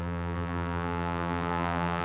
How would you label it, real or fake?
fake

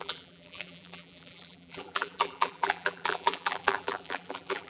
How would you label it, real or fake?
fake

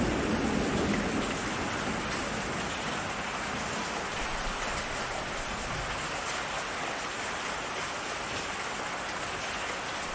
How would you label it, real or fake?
real